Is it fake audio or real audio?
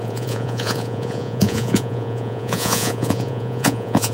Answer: fake